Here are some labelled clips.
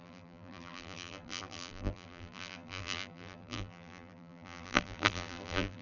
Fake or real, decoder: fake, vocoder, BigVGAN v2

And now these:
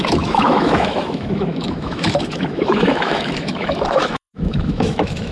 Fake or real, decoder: fake, autoencoder, DAC-VAE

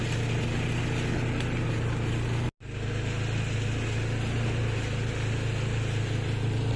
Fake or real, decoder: real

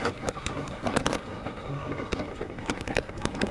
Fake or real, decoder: fake, codec, SNAC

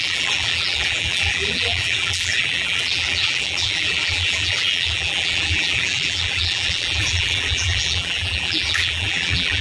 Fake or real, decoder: fake, vocoder, BigVGAN v2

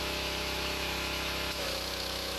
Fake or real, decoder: fake, autoencoder, DAC-VAE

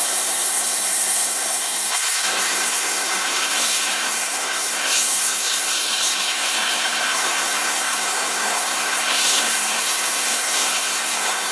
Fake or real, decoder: fake, codec, SNAC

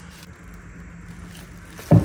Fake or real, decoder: real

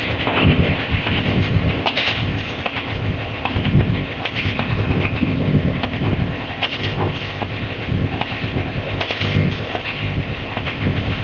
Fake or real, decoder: fake, codec, ZipCodec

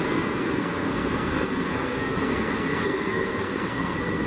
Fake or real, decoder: fake, codec, SNAC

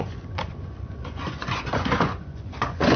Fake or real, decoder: fake, vocoder, Vocos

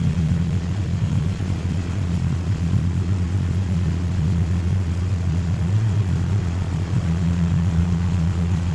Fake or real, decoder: fake, vocoder, Vocos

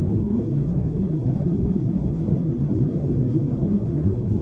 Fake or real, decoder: fake, codec, SNAC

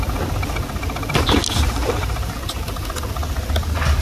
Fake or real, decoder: real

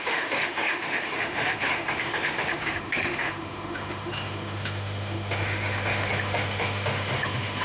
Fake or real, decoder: fake, autoencoder, DAC-VAE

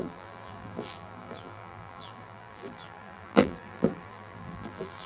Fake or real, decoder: fake, vocoder, BigVGAN v2